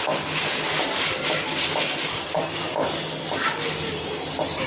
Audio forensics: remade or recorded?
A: recorded